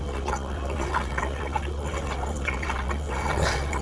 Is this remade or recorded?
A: remade